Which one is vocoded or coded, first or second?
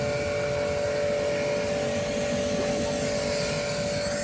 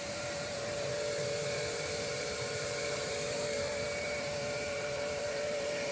second